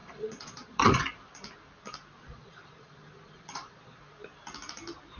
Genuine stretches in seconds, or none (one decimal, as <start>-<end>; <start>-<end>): 1.0-2.2; 4.0-5.2